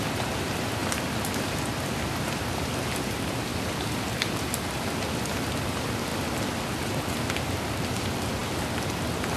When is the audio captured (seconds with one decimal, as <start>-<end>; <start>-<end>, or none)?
6.1-6.7; 8.4-9.0